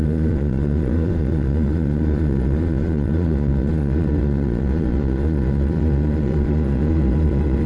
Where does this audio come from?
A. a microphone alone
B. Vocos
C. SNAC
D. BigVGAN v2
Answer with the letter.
B